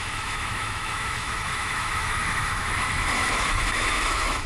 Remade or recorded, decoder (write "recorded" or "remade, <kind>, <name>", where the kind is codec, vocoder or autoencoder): remade, autoencoder, DAC-VAE